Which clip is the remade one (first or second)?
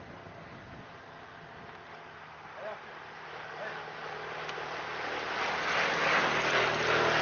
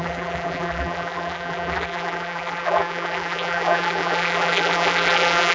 second